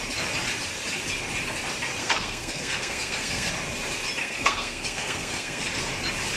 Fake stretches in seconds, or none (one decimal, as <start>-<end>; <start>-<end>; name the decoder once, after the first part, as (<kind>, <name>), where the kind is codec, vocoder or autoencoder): 2.0-3.5 (codec, SNAC); 4.2-5.7

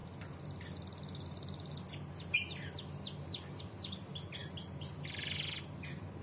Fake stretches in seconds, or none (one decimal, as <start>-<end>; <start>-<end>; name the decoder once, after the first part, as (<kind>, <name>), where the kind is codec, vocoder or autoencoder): none

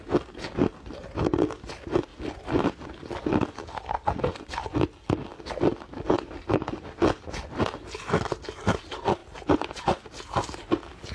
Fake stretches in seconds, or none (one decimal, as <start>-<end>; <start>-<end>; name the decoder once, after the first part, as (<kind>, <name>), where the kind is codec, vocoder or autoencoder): 5.3-6.6 (codec, DAC)

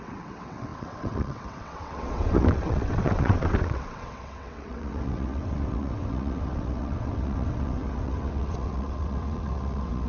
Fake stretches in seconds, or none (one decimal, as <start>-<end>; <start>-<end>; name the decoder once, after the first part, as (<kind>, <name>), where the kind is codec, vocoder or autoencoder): 0.0-10.1 (vocoder, WaveNeXt)

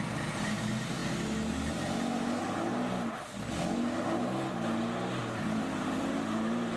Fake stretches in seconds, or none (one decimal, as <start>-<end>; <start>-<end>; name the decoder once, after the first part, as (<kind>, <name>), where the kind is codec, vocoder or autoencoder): 5.2-6.8 (vocoder, BigVGAN v2)

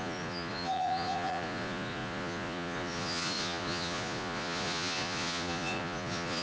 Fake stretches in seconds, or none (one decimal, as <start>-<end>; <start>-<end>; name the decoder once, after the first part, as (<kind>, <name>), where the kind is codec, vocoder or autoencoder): 0.0-6.4 (vocoder, Vocos)